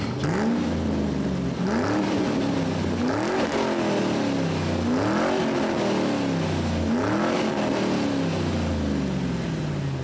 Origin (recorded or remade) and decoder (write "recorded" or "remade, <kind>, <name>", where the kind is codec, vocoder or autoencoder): recorded